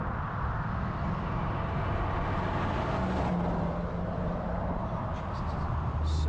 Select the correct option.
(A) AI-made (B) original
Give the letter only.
B